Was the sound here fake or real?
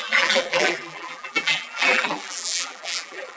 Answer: fake